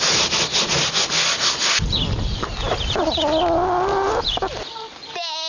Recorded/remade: recorded